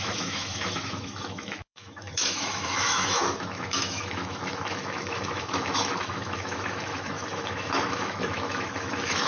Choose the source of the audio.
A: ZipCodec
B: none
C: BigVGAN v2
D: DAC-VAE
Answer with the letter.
D